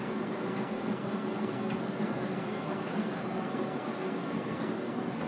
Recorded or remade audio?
remade